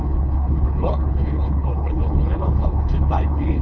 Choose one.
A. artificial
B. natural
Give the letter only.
A